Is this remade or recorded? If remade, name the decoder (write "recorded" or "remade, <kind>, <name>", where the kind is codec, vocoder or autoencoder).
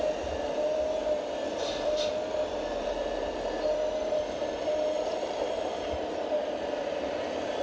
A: remade, vocoder, BigVGAN v2